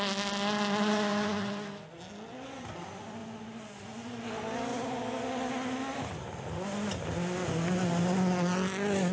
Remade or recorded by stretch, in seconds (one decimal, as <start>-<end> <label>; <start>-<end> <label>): 0.0-4.7 recorded; 4.7-5.2 remade; 5.2-9.1 recorded